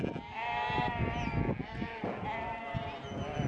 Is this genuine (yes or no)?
yes